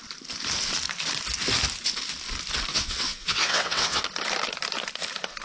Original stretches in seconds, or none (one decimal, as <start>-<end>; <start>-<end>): 0.0-2.7; 4.0-5.4